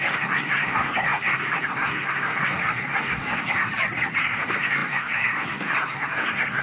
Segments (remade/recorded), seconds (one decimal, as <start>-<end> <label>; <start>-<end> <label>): 0.0-3.7 remade; 3.7-4.2 recorded; 4.2-6.6 remade